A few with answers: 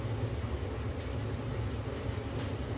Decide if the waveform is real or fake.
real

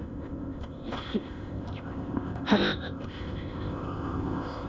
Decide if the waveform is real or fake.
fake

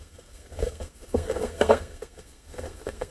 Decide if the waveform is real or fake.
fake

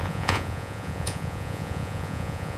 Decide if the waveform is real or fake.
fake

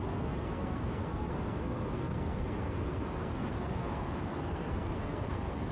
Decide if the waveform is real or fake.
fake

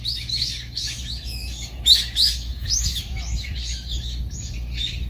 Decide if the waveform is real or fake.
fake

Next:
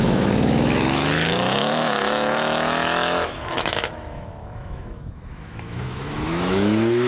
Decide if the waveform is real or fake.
fake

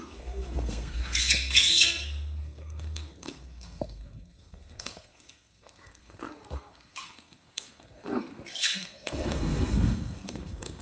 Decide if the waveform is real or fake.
fake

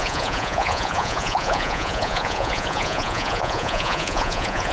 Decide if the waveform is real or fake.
fake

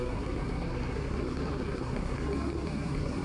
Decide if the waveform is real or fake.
fake